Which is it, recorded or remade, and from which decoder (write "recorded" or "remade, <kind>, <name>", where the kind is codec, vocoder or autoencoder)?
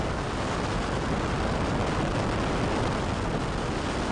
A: recorded